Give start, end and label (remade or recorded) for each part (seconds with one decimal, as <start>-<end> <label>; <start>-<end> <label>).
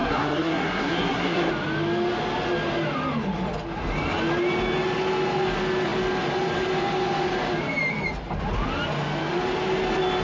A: 0.0-1.5 remade; 1.5-10.2 recorded